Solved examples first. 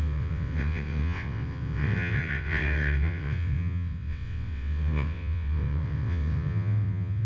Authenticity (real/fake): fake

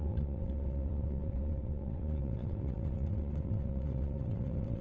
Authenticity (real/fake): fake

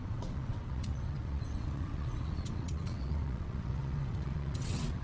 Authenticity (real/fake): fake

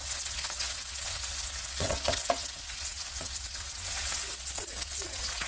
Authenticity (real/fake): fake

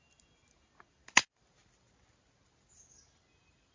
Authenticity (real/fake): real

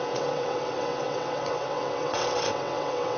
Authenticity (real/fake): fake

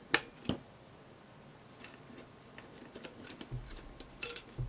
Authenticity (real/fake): real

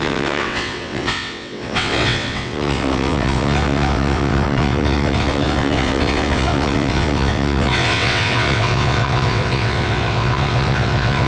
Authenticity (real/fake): fake